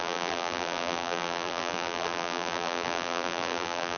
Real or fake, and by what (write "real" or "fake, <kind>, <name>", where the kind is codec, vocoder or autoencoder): fake, vocoder, BigVGAN v2